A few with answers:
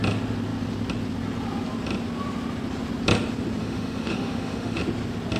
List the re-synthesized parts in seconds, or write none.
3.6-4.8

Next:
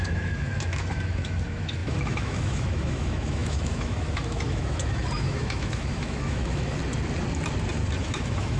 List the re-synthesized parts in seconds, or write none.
0.0-6.8; 8.0-8.6